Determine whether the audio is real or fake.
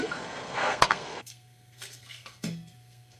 fake